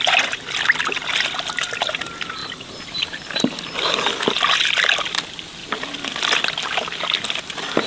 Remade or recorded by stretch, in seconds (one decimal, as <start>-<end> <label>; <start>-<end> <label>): 0.0-7.9 recorded